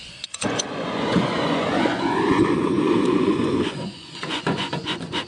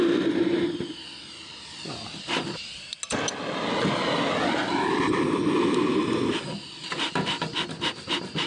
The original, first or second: second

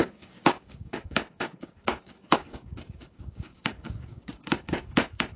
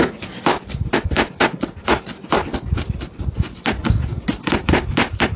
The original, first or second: second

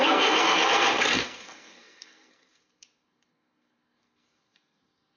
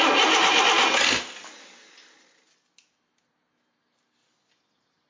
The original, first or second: second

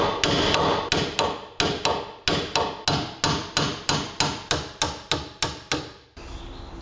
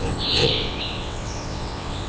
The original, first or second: first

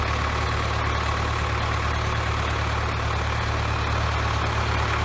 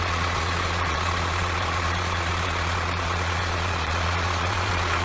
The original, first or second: first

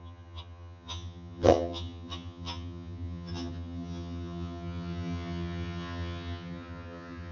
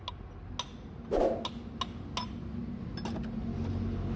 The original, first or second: second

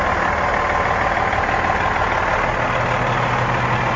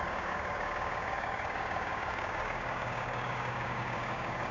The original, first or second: first